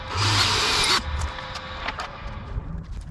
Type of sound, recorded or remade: recorded